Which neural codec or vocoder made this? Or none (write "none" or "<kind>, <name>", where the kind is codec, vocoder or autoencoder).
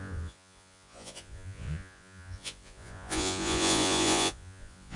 vocoder, Vocos